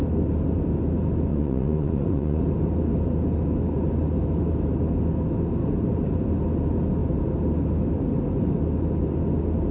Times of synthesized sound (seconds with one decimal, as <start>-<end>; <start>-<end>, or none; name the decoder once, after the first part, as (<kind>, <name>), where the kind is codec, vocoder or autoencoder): 1.3-2.4 (vocoder, Vocos)